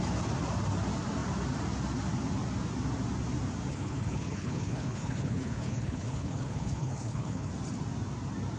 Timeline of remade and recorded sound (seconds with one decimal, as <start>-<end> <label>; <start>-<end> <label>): 0.0-3.7 recorded; 3.7-7.5 remade; 7.5-8.6 recorded